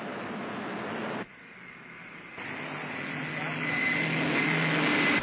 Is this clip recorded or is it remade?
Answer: recorded